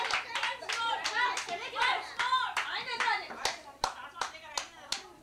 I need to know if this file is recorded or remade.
recorded